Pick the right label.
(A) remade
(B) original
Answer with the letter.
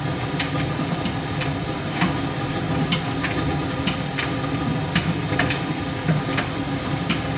B